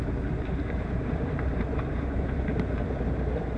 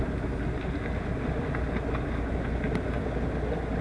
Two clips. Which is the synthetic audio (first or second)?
first